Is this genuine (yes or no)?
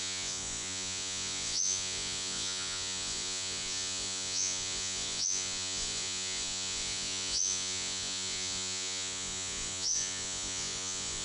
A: no